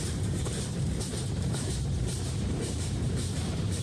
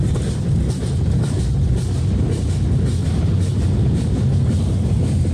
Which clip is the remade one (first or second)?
first